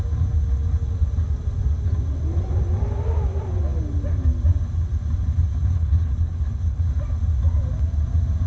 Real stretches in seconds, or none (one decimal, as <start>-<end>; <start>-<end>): 0.0-5.7; 6.8-8.5